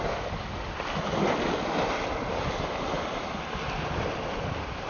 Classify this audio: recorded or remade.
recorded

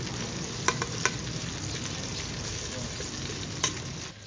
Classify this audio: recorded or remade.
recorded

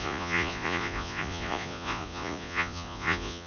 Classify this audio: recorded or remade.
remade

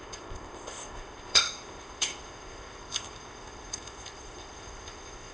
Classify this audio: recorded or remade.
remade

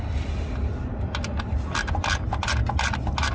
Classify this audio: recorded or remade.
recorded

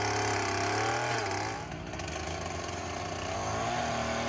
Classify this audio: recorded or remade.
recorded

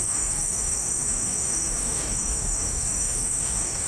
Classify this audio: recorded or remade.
remade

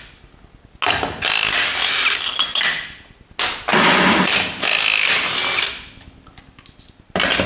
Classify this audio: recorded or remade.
recorded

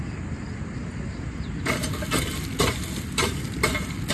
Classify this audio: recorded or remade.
recorded